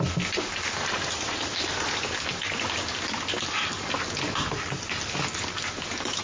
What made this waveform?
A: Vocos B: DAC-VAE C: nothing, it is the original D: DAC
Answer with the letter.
C